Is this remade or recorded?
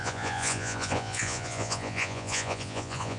remade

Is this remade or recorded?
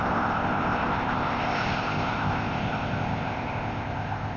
remade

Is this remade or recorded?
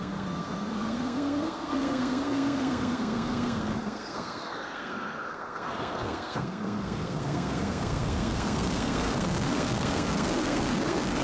remade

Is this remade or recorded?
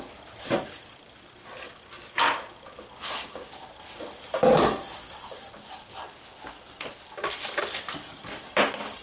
recorded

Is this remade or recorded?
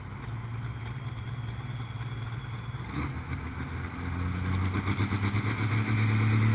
recorded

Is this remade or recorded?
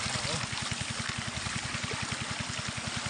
recorded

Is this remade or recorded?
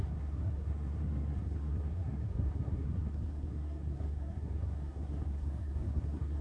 remade